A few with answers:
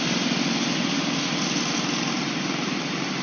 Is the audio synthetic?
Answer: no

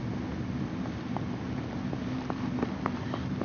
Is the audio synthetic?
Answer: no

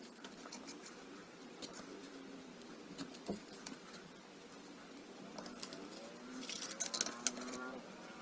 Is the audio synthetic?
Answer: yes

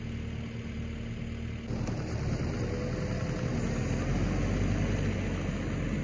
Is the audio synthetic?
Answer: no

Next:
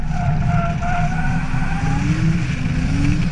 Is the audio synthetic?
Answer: no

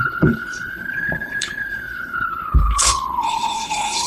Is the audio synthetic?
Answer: yes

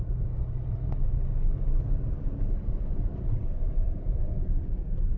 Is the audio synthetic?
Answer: no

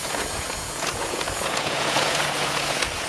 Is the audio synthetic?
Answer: yes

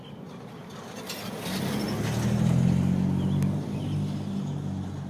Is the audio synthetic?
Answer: no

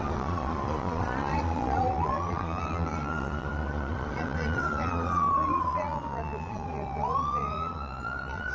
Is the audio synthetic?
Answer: yes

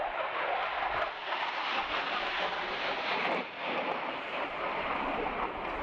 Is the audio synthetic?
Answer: no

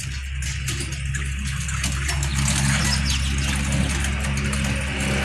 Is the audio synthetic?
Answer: no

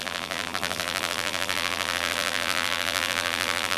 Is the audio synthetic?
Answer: yes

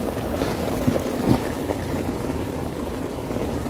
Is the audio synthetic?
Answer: yes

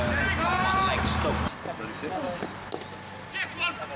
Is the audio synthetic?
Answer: no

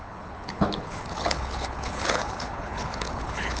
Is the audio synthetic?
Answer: yes